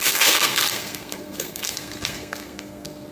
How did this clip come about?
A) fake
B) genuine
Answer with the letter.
A